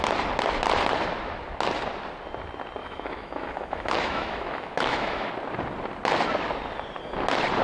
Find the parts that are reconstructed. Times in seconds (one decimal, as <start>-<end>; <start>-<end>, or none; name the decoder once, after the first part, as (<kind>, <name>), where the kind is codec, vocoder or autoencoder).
2.8-5.3 (autoencoder, DAC-VAE)